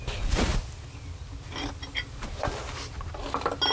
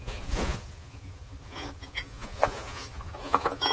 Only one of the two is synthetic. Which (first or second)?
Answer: second